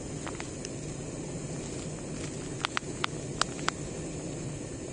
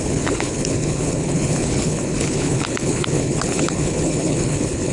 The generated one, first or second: second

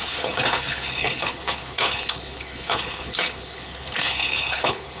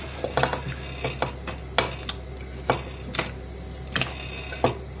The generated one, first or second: first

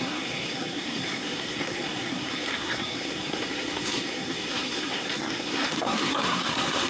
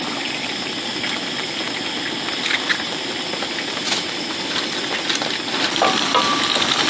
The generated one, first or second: first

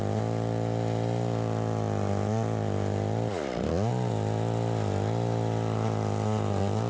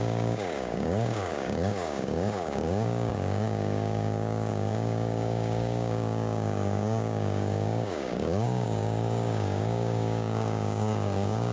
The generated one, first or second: second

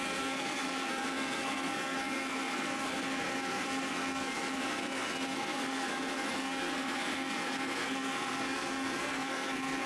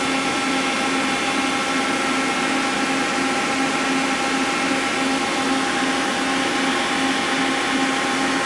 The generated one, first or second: first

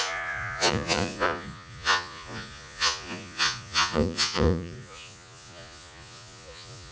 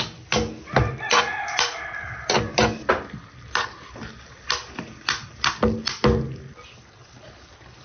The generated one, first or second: first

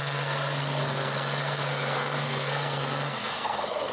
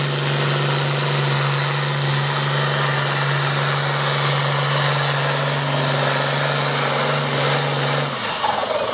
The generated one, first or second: first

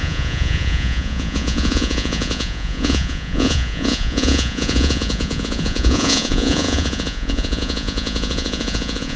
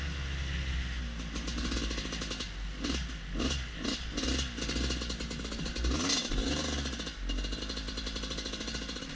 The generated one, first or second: first